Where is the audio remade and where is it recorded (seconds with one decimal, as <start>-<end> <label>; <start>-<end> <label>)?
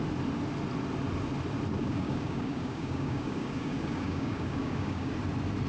0.0-1.8 recorded; 1.8-5.1 remade; 5.1-5.7 recorded